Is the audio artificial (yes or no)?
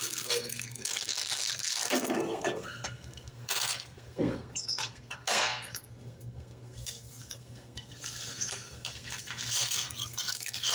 yes